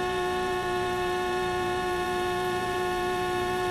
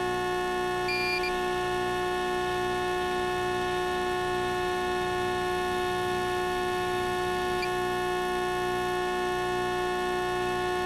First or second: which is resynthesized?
first